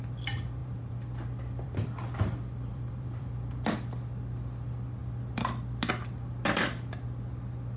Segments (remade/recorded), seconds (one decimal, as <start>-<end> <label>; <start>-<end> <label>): 0.0-0.6 recorded; 0.6-3.7 remade; 3.7-7.8 recorded